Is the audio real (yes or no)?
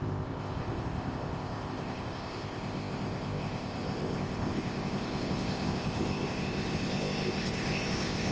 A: no